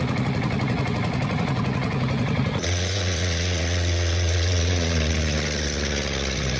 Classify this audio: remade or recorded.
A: remade